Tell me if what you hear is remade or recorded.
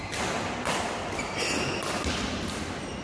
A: recorded